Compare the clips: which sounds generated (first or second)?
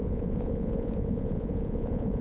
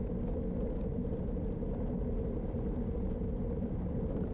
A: first